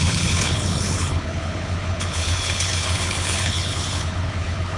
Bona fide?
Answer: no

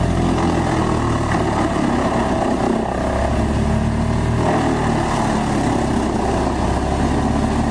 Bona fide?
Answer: yes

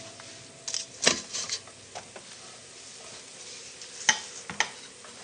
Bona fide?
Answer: yes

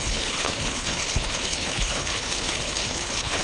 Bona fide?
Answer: no